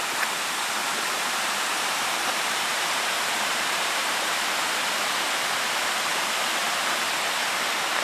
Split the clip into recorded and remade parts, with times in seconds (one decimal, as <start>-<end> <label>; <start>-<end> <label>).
0.0-0.8 recorded; 0.8-4.8 remade; 4.8-6.1 recorded; 6.1-6.9 remade; 6.9-8.0 recorded